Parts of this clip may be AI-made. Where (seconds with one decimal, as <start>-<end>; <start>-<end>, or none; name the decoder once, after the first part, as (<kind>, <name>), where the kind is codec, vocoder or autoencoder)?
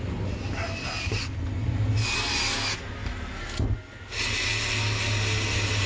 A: none